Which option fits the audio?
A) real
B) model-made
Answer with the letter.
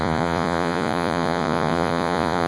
B